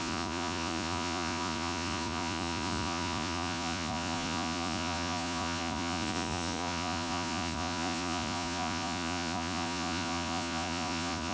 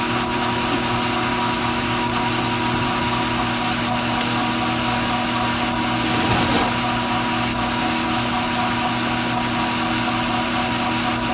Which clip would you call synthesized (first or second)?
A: first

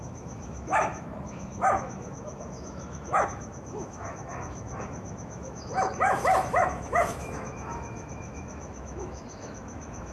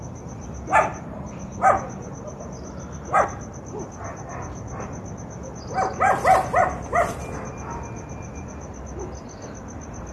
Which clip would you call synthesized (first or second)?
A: first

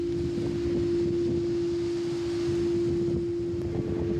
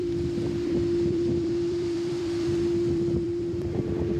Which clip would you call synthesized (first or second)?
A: second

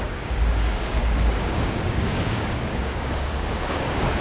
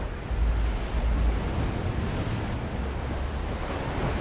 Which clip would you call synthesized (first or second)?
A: first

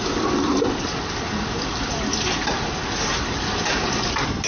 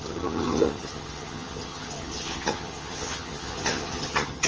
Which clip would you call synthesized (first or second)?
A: second